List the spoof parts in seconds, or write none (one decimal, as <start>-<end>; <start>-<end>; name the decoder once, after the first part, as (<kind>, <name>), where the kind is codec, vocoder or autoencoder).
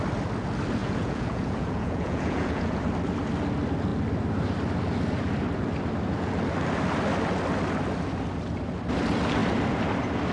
0.8-2.8 (vocoder, Vocos)